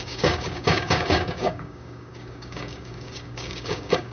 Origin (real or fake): fake